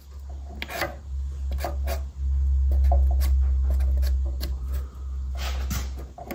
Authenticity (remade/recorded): recorded